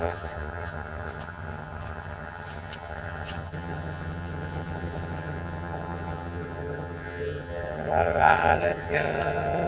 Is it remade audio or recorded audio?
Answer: remade